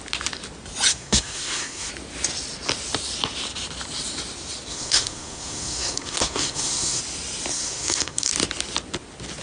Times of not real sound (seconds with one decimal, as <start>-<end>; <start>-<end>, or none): 0.9-1.9; 4.7-7.0; 7.5-8.3